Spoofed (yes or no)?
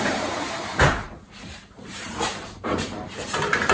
yes